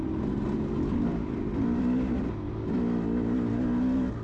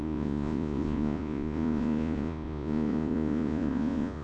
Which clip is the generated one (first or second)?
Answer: second